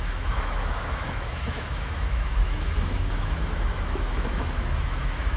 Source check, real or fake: fake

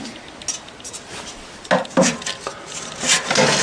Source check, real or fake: real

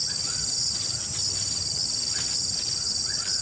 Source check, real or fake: real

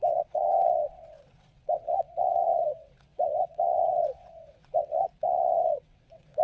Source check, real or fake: fake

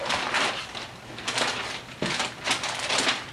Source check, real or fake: real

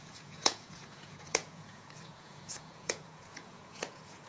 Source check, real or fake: fake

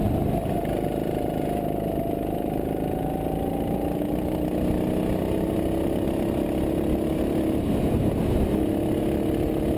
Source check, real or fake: real